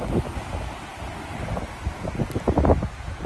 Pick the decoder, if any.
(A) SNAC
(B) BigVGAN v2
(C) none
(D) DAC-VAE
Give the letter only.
C